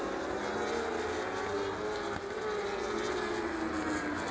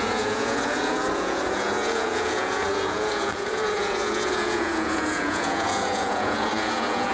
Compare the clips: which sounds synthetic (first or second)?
second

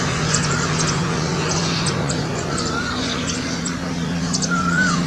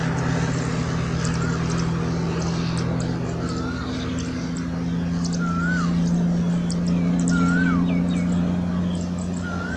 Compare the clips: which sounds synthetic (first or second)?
first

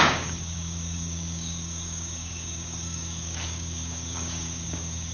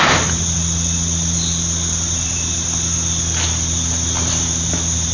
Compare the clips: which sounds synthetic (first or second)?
first